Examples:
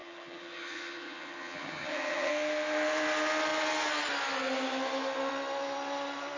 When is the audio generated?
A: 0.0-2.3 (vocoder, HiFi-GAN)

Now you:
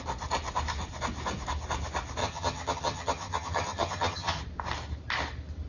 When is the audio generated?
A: 2.2-4.4 (vocoder, HiFi-GAN)

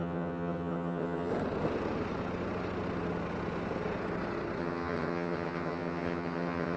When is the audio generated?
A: 0.0-1.3 (vocoder, HiFi-GAN); 4.6-6.8

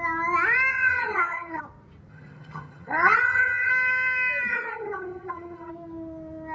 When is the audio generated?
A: 0.7-1.6 (vocoder, HiFi-GAN); 2.1-3.7; 4.5-5.7